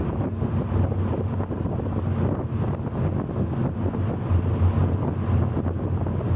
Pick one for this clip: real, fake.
real